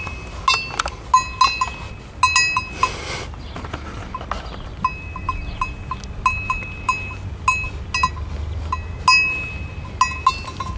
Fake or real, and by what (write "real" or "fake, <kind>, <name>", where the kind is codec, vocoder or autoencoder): real